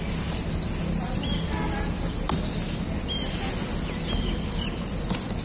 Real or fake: real